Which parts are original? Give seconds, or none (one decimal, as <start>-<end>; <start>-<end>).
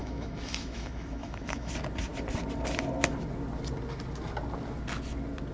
1.7-5.5